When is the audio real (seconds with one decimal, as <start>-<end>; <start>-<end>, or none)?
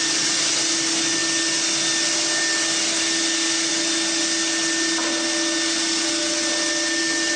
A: 0.0-7.4